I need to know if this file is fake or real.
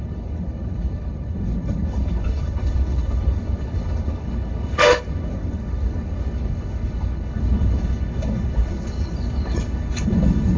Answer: fake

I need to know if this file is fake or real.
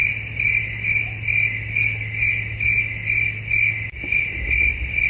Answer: real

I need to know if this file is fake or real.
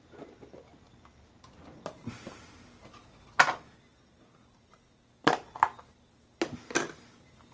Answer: real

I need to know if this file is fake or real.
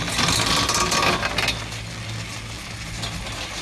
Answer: real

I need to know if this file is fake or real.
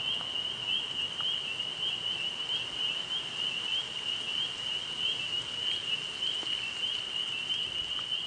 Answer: real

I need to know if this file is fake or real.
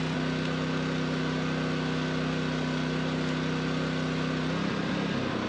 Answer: real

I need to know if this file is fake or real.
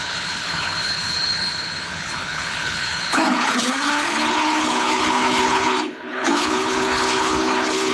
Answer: fake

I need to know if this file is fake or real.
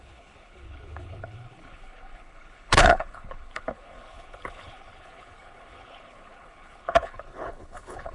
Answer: fake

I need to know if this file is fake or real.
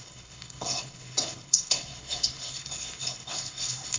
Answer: fake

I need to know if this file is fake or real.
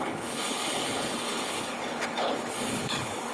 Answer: fake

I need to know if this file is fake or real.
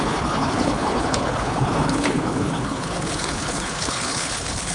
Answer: fake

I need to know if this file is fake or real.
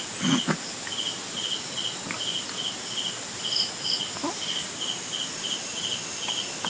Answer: real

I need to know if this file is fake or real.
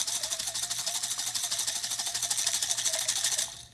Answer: real